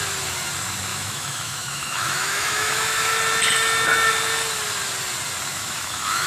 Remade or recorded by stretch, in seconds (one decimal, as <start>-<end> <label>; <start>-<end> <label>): 0.0-0.9 recorded; 0.9-3.1 remade; 3.1-5.5 recorded; 5.5-6.3 remade